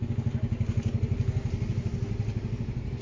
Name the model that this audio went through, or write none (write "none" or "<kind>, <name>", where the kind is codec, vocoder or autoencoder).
none